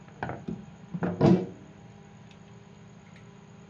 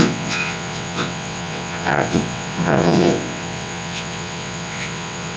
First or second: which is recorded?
first